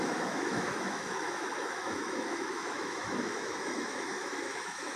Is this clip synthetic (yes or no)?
yes